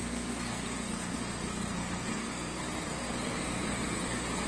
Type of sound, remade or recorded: remade